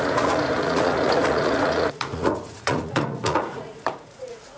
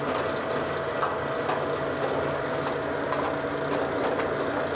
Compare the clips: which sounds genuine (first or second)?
second